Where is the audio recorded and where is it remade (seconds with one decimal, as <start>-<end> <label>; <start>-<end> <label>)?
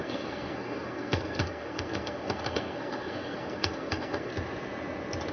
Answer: 0.0-4.3 remade; 4.3-5.3 recorded